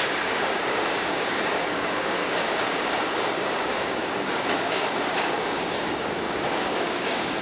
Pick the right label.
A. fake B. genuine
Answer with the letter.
A